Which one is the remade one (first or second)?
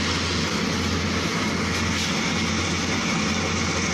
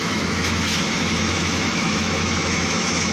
second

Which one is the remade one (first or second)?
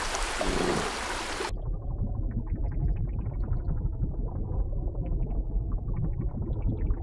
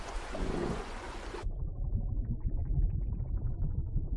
second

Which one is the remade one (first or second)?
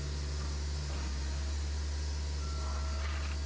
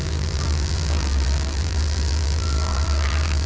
second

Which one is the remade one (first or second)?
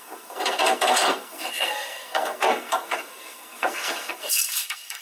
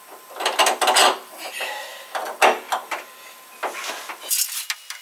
first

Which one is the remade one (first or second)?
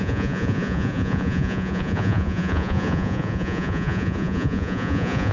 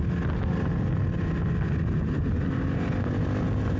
first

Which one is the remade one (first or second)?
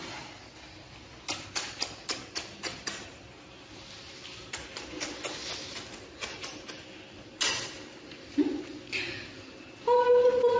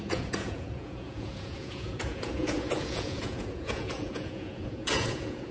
second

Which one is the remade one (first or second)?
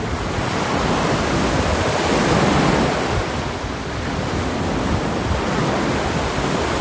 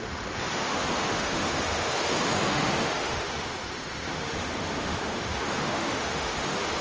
second